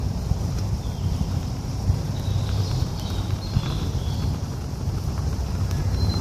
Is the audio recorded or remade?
remade